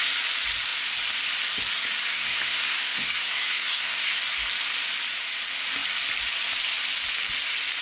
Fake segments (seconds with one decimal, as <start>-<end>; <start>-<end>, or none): 2.1-4.2